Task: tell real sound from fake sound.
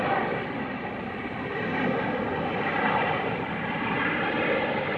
fake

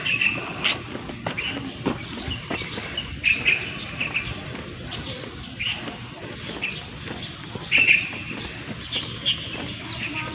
real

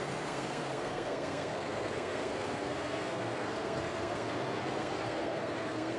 fake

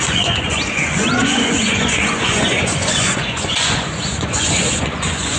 fake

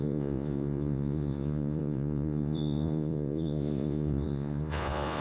fake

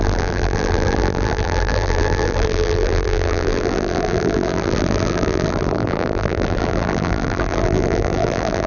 fake